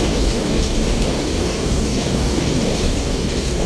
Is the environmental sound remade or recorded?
remade